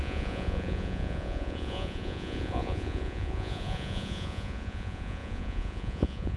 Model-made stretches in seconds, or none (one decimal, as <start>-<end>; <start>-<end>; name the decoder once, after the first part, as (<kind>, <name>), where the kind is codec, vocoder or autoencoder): 0.0-6.4 (vocoder, Vocos)

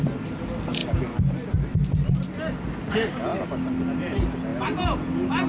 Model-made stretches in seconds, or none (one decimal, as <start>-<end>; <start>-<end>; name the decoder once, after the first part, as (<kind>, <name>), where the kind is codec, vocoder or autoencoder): none

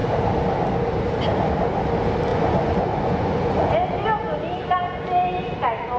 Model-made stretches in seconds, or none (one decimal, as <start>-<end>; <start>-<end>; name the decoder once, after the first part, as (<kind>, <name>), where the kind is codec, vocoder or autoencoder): 2.3-3.7 (vocoder, Vocos)

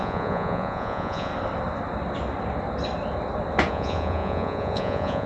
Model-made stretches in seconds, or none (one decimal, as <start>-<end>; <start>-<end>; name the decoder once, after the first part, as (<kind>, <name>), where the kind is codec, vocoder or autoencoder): 0.0-1.3 (vocoder, Vocos); 3.7-5.3

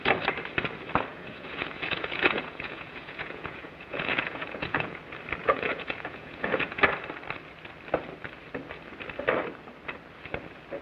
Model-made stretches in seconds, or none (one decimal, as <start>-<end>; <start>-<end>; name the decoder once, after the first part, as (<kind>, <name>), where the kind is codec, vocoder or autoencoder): 1.1-5.0 (vocoder, Vocos); 5.4-6.8